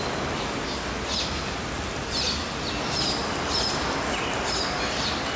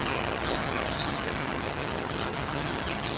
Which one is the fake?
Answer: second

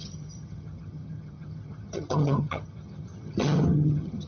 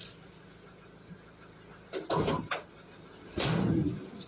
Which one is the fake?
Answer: first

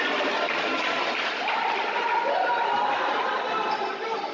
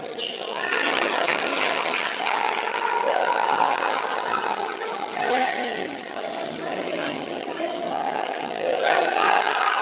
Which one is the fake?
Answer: second